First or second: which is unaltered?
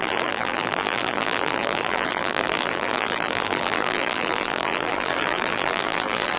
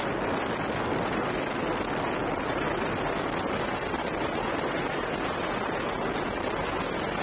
second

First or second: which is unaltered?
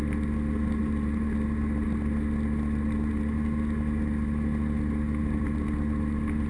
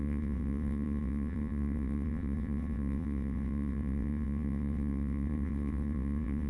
first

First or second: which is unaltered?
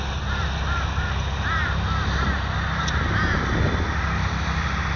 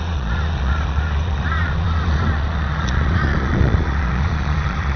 first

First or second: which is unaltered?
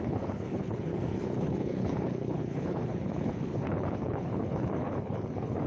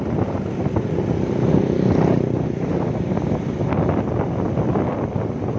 second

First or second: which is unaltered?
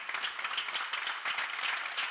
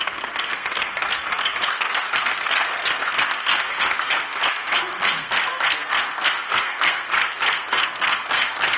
first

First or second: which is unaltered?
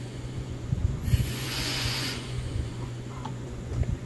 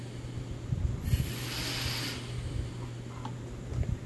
second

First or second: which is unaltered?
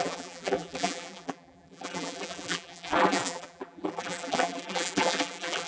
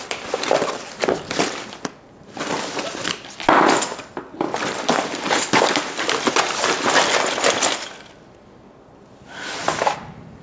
second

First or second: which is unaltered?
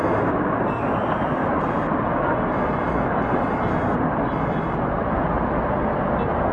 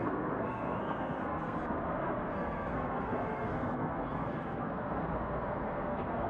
first